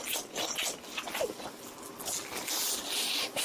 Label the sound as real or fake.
real